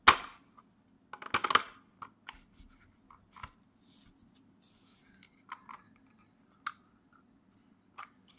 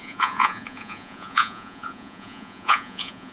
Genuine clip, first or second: first